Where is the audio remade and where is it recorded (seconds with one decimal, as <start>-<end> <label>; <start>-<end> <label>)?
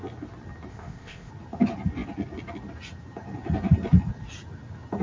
0.0-0.7 recorded; 0.7-1.3 remade; 1.3-5.0 recorded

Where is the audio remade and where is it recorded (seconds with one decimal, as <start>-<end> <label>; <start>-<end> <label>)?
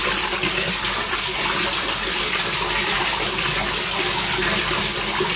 0.0-5.4 recorded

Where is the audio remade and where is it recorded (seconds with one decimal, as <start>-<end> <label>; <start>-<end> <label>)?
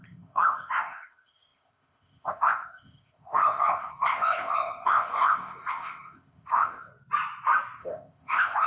0.0-6.9 remade; 6.9-7.8 recorded; 7.8-8.7 remade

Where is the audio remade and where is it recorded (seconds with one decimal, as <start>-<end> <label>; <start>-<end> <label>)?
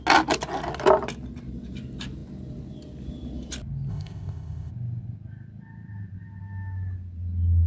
0.0-3.9 recorded; 3.9-4.7 remade; 4.7-7.7 recorded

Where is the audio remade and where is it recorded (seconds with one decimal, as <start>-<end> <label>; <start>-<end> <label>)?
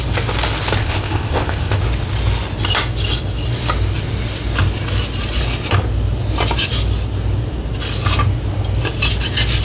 0.0-0.8 recorded; 0.8-1.8 remade; 1.8-9.6 recorded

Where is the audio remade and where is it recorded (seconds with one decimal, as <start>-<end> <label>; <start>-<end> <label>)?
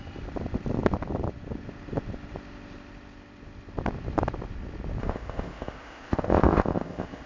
0.0-5.0 recorded; 5.0-7.3 remade